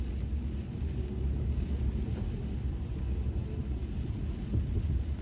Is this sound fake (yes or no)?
no